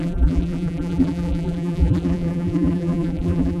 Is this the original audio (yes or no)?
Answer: no